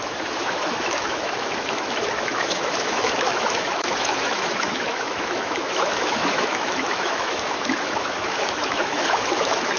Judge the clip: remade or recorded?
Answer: remade